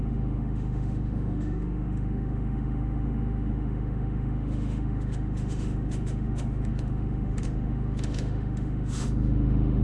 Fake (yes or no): yes